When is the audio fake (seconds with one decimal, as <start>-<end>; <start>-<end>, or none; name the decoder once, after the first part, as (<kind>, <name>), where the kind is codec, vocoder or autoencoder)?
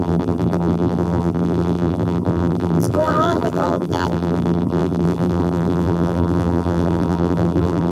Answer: 0.0-7.9 (vocoder, BigVGAN v2)